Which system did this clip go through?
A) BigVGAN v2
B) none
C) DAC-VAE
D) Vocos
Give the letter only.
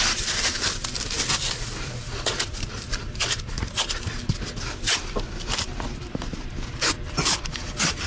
A